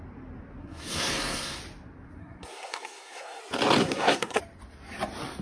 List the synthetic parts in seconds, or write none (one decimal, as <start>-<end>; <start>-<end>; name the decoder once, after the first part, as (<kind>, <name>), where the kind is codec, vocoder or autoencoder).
0.6-1.6 (codec, SNAC); 2.2-3.4; 3.8-4.4